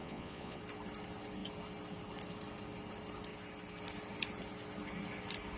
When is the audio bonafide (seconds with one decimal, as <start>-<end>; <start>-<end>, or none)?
0.6-5.6